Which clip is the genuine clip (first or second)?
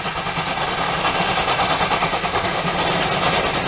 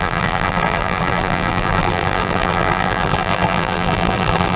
first